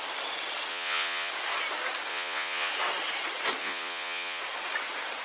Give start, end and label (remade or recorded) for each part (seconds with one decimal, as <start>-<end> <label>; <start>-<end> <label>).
0.0-0.7 recorded; 0.7-1.3 remade; 1.3-2.1 recorded; 2.1-2.7 remade; 2.7-3.6 recorded; 3.6-4.4 remade; 4.4-5.2 recorded